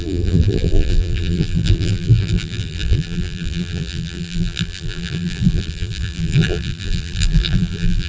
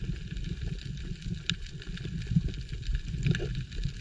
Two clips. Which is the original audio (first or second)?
second